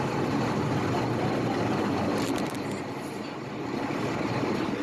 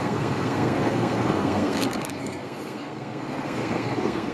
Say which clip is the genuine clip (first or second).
first